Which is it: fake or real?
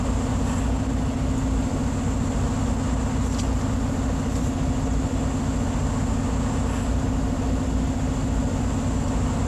real